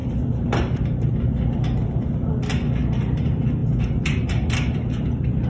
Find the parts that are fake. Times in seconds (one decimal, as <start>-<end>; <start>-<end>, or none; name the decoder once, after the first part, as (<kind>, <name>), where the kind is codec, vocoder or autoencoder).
none